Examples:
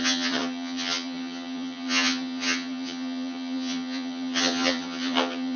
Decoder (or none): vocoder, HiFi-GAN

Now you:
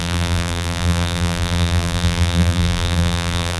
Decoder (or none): vocoder, BigVGAN v2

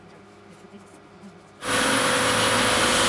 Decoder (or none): none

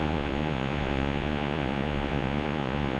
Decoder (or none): vocoder, Vocos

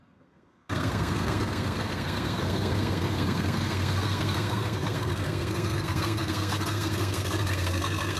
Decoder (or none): codec, SNAC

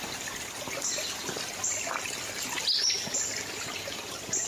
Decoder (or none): none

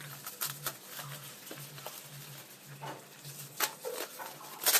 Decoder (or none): none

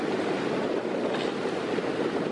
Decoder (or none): none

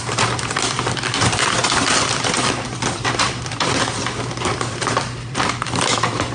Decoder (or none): vocoder, BigVGAN v2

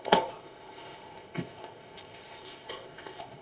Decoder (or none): codec, ZipCodec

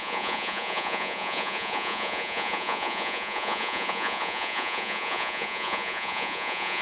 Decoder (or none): vocoder, Vocos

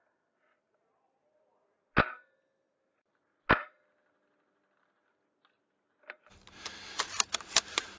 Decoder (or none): none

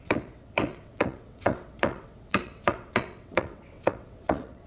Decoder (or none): vocoder, WaveNeXt